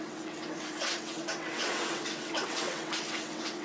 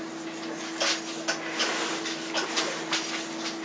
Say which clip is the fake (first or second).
first